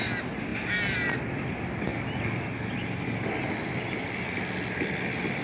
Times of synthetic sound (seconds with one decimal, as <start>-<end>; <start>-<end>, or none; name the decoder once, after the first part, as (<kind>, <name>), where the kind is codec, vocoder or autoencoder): none